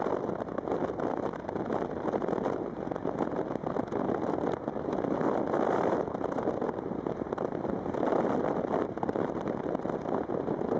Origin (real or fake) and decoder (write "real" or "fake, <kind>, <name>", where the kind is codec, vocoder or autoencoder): real